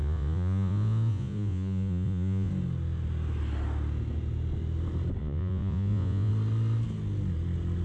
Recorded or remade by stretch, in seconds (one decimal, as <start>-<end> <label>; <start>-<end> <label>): 0.0-2.5 remade; 2.5-5.2 recorded; 5.2-6.3 remade; 6.3-7.8 recorded